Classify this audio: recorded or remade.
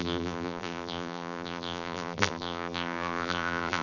remade